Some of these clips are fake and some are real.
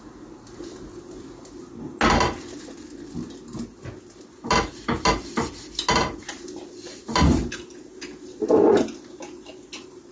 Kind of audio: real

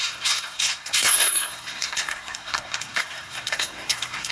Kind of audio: fake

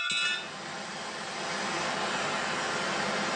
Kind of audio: real